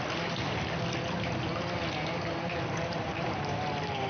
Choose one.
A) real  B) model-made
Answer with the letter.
A